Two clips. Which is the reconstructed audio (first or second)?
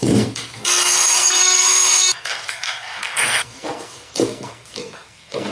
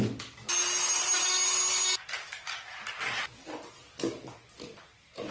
first